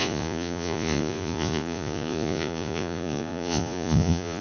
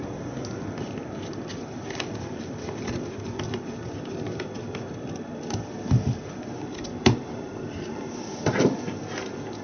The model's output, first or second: first